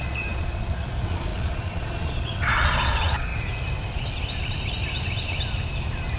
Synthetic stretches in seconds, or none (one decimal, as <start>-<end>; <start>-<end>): 0.0-3.3